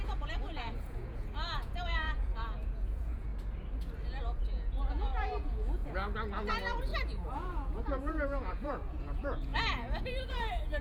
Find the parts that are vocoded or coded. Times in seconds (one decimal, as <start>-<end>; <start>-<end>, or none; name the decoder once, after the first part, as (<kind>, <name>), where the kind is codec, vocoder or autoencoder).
0.0-3.3 (vocoder, Vocos); 4.2-5.8; 6.5-10.8